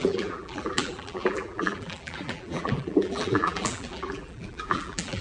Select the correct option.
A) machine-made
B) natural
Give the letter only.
A